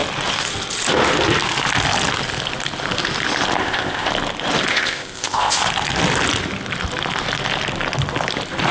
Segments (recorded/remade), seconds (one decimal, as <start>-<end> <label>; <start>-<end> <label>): 0.0-3.6 recorded; 3.6-4.1 remade; 4.1-4.7 recorded; 4.7-5.6 remade; 5.6-8.7 recorded